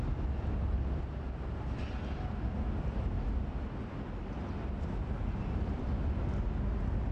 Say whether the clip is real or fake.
real